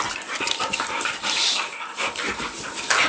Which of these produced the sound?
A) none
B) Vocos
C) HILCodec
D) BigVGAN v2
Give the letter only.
D